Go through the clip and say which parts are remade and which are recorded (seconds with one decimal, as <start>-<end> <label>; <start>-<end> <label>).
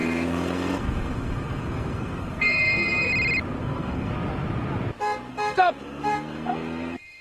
0.0-3.1 remade; 3.1-3.6 recorded; 3.6-4.1 remade; 4.1-5.3 recorded; 5.3-7.2 remade